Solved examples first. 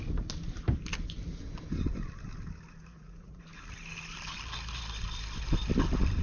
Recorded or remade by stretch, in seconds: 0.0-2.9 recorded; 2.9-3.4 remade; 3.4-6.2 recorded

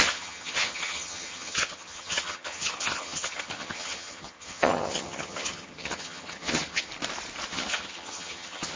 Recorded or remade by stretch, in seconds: 0.0-6.9 remade; 6.9-7.5 recorded; 7.5-8.8 remade

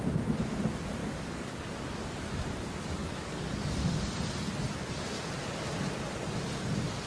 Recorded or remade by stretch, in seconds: 0.0-1.0 recorded; 1.0-2.1 remade; 2.1-3.0 recorded; 3.0-4.0 remade; 4.0-7.1 recorded